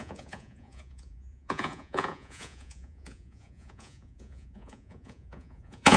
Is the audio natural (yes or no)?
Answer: no